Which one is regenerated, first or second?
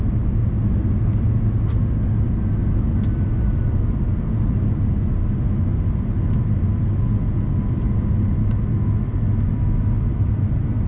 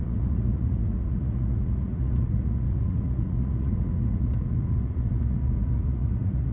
second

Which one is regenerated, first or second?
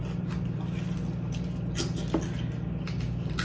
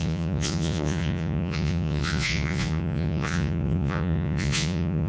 second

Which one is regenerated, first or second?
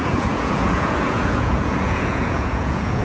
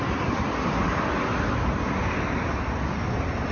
first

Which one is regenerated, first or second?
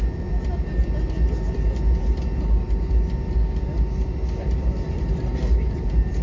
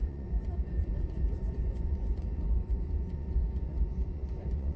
second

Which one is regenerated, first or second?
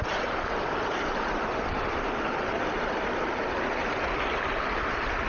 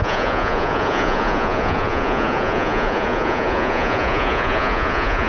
second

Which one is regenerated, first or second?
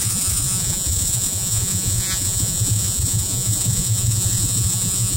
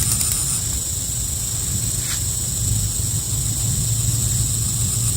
first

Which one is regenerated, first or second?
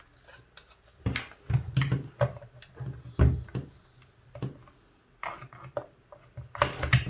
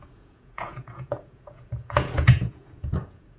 second